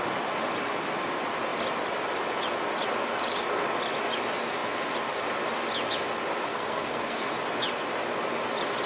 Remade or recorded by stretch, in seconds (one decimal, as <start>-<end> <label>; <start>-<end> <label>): 0.0-6.5 recorded; 6.5-7.3 remade; 7.3-8.9 recorded